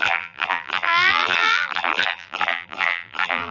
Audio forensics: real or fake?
fake